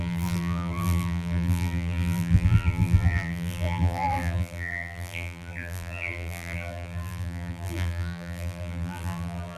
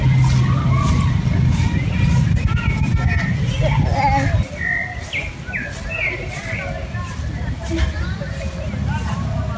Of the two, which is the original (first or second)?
second